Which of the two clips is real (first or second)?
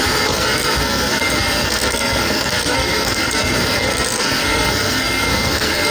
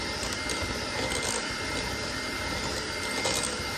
second